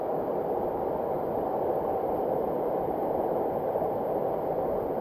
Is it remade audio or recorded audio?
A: recorded